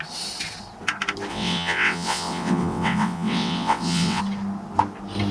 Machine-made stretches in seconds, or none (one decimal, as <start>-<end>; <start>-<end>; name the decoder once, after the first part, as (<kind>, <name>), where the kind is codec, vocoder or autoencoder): 1.3-4.2 (vocoder, WaveNeXt)